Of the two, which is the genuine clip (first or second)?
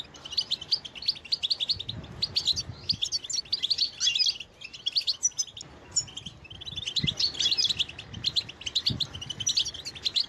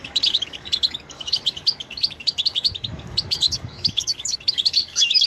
first